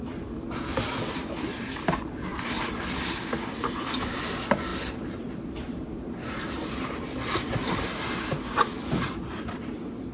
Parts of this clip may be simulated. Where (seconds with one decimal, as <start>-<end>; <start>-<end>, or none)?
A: none